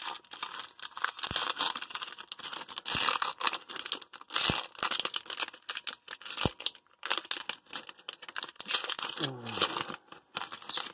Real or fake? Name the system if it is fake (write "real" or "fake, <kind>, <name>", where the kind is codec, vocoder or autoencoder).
real